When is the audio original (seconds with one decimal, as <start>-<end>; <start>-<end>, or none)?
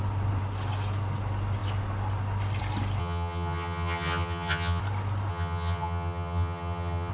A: 0.0-3.0; 4.8-5.3